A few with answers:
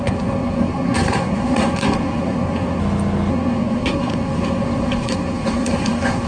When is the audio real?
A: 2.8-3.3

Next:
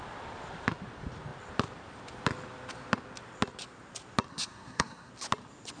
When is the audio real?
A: 0.0-4.3; 5.1-5.8

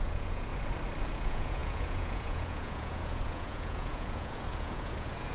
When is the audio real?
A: 0.5-1.1

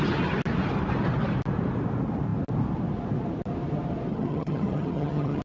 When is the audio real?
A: 0.0-4.1

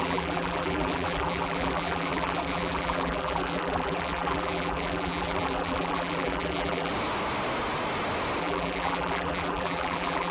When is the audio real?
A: 6.9-8.4

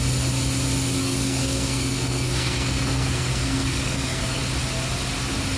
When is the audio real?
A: 0.0-1.0; 4.4-5.6